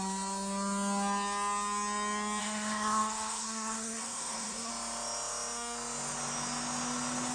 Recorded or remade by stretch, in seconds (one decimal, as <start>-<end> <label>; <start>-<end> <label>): 0.0-2.4 recorded; 2.4-4.7 remade; 4.7-7.3 recorded